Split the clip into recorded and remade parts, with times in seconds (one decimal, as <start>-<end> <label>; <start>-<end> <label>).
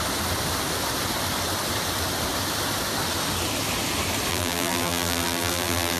0.0-4.3 recorded; 4.3-6.0 remade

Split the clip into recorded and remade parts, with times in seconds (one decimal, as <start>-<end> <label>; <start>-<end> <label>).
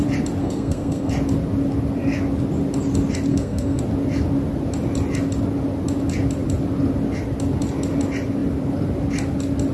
0.0-0.4 recorded; 0.4-1.1 remade; 1.1-3.3 recorded; 3.3-3.8 remade; 3.8-9.7 recorded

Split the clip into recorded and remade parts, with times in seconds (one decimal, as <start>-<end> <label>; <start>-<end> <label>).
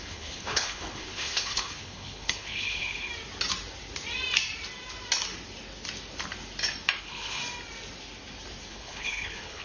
0.0-3.1 remade; 3.1-7.0 recorded; 7.0-7.4 remade; 7.4-8.7 recorded; 8.7-9.6 remade